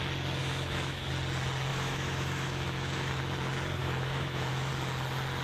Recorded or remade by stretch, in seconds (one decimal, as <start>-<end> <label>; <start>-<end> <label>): 0.0-0.4 recorded; 0.4-1.1 remade; 1.1-1.7 recorded; 1.7-3.2 remade; 3.2-3.8 recorded; 3.8-4.7 remade; 4.7-5.4 recorded